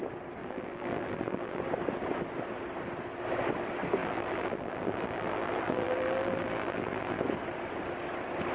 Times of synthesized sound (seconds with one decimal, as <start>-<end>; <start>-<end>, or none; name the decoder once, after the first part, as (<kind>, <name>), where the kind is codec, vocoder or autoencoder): 0.4-1.6 (vocoder, BigVGAN v2); 4.0-7.2